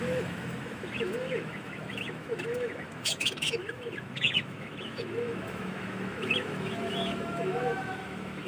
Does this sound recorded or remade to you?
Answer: remade